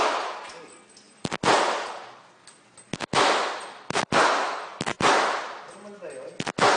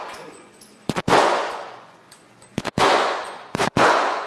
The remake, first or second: second